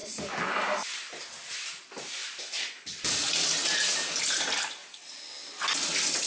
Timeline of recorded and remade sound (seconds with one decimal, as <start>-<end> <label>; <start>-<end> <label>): 0.0-1.2 remade; 1.2-2.2 recorded; 2.2-3.3 remade; 3.3-4.8 recorded; 4.8-5.5 remade; 5.5-6.3 recorded